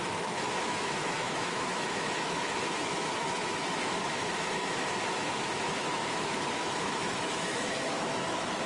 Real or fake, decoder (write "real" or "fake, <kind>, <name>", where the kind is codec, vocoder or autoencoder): fake, autoencoder, DAC-VAE